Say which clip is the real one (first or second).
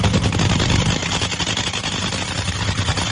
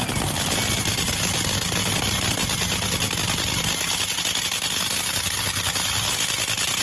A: second